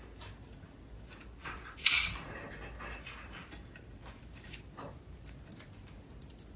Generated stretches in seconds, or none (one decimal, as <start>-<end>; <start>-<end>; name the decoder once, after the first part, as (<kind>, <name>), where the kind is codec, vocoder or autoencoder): 1.4-2.1 (vocoder, Vocos)